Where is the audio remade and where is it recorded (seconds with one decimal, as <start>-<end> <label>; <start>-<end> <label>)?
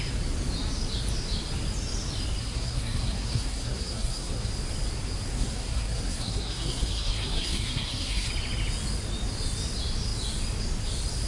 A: 0.0-2.4 recorded; 2.4-4.5 remade; 4.5-5.3 recorded; 5.3-8.3 remade; 8.3-11.3 recorded